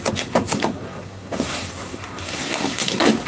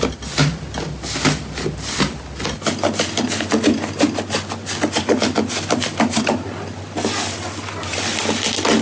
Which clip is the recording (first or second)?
second